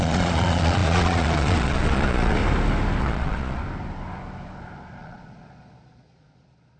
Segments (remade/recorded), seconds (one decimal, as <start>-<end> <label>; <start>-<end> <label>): 0.0-2.4 remade; 2.4-3.0 recorded; 3.0-3.6 remade; 3.6-5.0 recorded; 5.0-6.8 remade